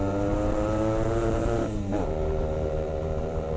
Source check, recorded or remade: remade